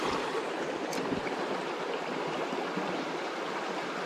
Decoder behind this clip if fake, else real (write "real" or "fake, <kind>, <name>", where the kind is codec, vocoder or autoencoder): real